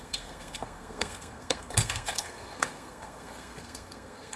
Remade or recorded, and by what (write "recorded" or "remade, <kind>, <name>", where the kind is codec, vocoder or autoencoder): remade, codec, SNAC